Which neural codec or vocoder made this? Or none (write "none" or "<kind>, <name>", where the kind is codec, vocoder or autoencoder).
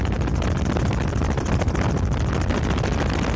none